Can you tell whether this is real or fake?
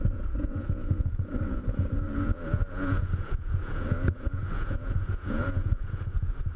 fake